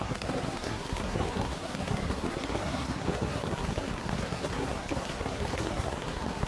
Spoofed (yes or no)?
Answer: yes